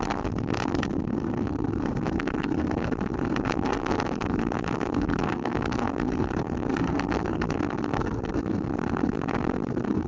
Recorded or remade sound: remade